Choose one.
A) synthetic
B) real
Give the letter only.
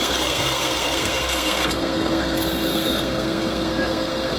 A